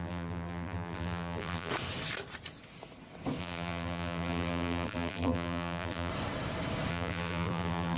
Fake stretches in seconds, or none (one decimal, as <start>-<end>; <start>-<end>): 0.0-1.7; 3.4-6.1; 6.9-8.0